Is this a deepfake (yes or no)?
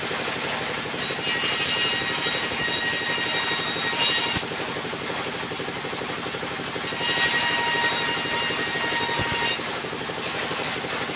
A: no